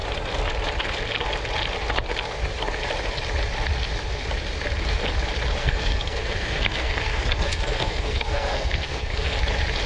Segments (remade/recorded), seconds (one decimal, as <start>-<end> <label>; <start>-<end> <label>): 0.0-5.6 recorded; 5.6-9.4 remade; 9.4-9.9 recorded